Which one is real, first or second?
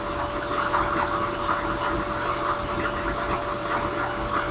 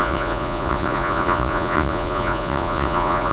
first